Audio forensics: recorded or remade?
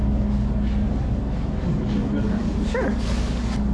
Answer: remade